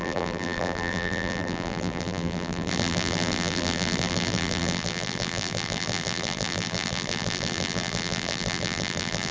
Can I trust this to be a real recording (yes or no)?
no